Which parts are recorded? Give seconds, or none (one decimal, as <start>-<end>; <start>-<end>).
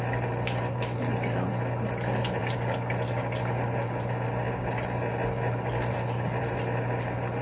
0.0-7.4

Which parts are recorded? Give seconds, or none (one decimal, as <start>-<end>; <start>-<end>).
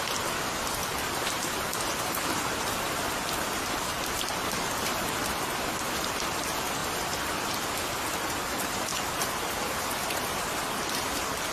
8.9-10.0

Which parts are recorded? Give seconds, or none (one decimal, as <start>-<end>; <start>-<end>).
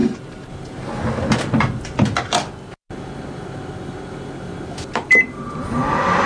0.5-6.3